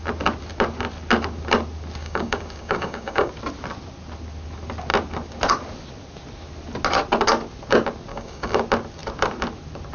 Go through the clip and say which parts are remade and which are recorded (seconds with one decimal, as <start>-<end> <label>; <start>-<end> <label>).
0.0-2.0 recorded; 2.0-3.3 remade; 3.3-8.1 recorded; 8.1-8.6 remade; 8.6-9.9 recorded